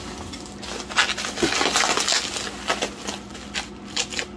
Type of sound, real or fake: real